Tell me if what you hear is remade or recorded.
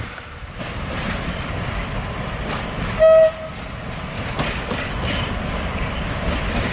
recorded